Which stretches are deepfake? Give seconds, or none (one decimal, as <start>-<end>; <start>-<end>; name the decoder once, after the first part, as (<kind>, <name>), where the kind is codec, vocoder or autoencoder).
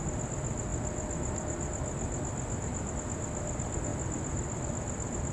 0.7-2.9 (vocoder, BigVGAN v2); 3.9-5.3